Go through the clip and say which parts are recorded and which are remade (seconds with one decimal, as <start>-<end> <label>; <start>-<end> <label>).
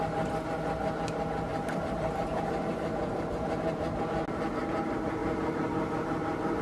0.0-1.5 recorded; 1.5-2.6 remade; 2.6-5.2 recorded; 5.2-6.6 remade